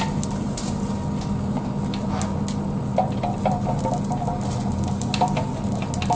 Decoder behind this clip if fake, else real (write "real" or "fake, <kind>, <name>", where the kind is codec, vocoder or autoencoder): real